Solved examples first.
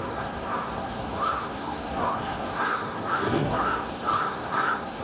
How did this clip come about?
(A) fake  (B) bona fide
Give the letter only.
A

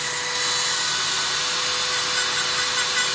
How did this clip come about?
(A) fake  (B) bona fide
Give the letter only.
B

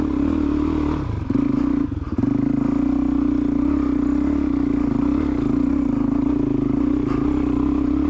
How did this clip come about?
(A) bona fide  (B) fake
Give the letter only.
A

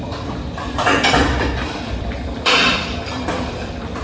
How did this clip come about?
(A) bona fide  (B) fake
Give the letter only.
B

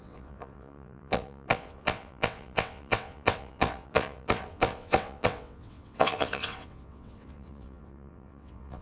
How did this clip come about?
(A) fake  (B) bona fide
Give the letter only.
A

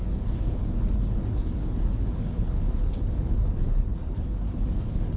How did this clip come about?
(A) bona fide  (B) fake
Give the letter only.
B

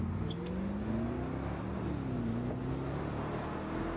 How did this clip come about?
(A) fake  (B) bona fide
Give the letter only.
B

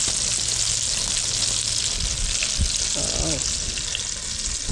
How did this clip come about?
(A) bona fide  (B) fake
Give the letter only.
A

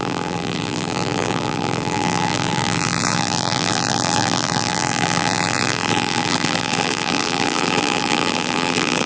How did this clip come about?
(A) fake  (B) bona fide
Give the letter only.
A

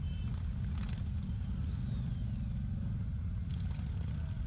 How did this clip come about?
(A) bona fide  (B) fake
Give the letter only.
A